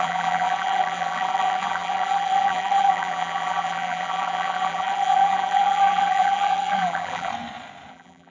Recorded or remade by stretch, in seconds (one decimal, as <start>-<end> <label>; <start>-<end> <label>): 0.0-7.3 remade; 7.3-7.9 recorded; 7.9-8.3 remade